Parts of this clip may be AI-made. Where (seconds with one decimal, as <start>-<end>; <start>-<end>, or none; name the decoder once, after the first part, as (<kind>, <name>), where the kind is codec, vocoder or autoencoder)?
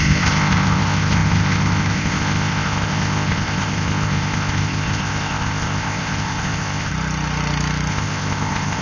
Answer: 0.0-6.9 (codec, ZipCodec); 7.9-8.8